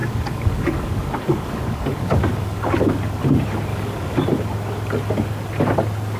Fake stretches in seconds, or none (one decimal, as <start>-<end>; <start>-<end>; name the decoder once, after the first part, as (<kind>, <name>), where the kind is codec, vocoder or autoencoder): 0.0-3.2 (codec, DAC); 3.7-4.2